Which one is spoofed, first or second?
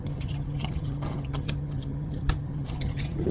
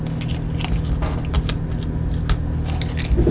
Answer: first